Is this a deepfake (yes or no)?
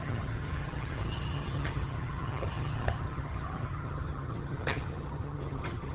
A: yes